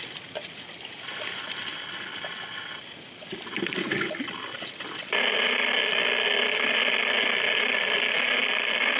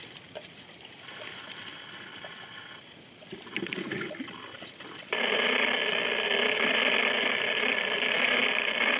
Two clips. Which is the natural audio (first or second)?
first